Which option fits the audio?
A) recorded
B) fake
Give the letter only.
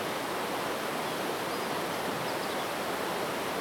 A